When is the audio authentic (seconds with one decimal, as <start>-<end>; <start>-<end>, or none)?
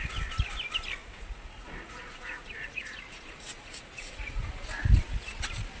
0.0-1.0; 4.5-5.8